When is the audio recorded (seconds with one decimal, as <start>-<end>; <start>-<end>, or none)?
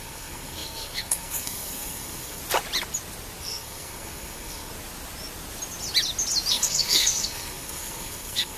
2.4-3.4; 4.7-6.5